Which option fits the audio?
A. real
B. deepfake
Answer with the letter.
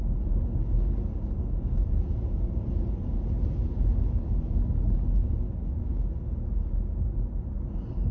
A